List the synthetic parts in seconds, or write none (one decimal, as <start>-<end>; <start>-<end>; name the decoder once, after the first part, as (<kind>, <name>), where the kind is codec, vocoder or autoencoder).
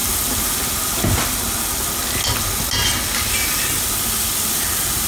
none